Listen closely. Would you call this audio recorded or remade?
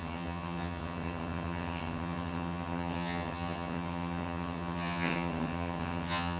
remade